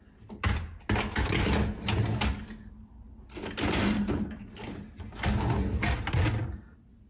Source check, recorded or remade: recorded